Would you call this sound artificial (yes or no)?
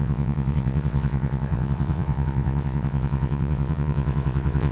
yes